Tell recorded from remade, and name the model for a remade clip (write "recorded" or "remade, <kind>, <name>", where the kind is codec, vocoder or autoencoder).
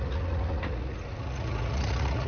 remade, vocoder, Vocos